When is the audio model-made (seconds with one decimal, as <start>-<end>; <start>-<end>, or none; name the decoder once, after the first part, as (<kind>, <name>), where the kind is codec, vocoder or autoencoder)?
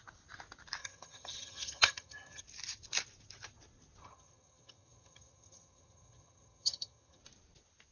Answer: 0.8-2.4 (vocoder, HiFi-GAN); 4.0-7.2